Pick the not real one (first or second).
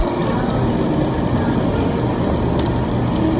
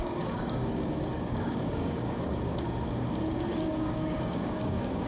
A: second